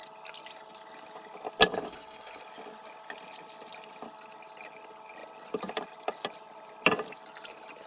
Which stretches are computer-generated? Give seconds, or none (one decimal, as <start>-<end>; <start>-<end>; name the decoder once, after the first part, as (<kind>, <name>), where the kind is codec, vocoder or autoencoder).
1.7-2.4 (codec, DAC)